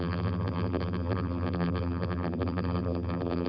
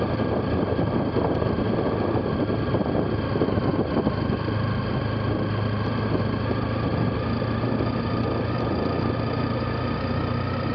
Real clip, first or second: second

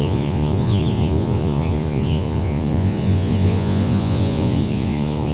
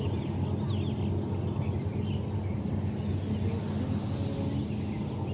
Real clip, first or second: second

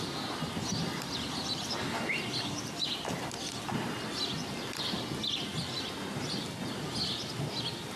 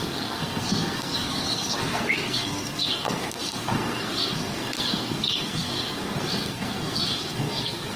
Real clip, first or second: first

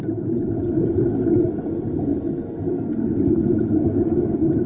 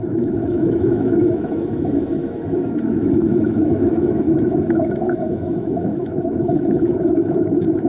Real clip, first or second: first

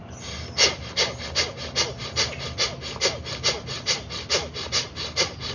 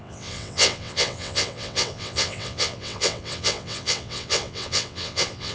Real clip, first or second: first